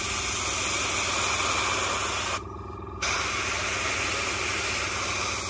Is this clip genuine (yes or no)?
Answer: yes